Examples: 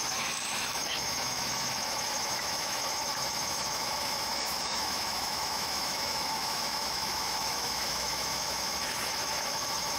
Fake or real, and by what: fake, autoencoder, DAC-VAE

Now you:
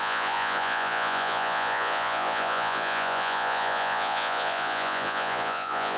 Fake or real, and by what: fake, vocoder, Vocos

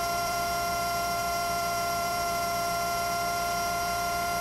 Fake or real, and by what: fake, vocoder, BigVGAN v2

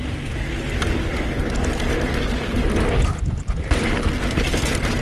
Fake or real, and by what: real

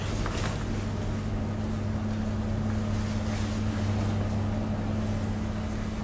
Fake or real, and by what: real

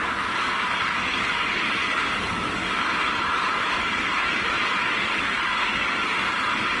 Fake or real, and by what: fake, codec, DAC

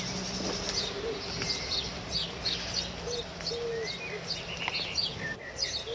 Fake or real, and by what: real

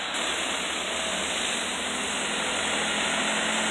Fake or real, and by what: real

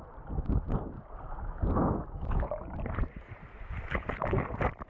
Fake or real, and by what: real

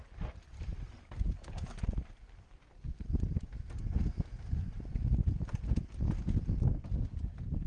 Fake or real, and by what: real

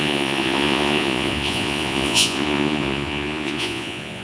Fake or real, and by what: fake, vocoder, Vocos